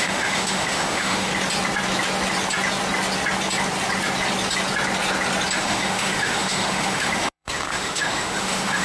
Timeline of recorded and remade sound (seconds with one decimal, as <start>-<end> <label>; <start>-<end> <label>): 0.0-1.3 remade; 1.3-5.6 recorded; 5.6-8.8 remade